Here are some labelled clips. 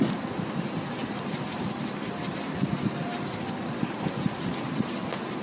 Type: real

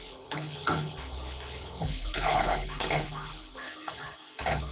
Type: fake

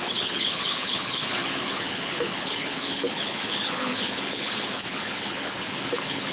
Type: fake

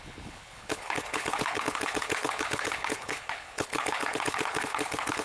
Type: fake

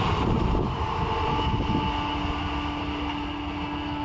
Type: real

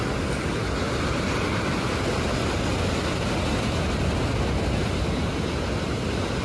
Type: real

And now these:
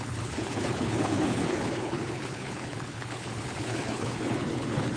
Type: fake